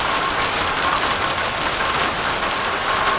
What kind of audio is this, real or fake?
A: real